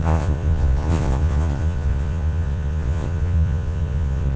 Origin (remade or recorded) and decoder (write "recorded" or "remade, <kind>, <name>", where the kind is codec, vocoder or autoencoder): remade, vocoder, Vocos